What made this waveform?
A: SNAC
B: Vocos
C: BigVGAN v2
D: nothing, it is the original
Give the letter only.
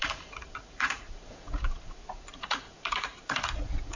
B